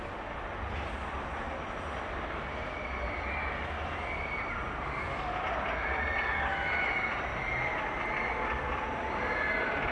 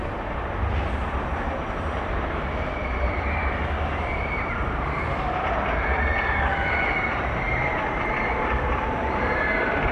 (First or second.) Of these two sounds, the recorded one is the first